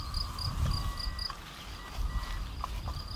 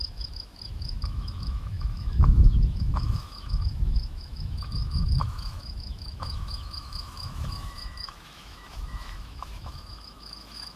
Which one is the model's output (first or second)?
second